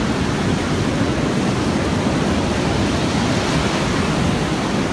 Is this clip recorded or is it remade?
recorded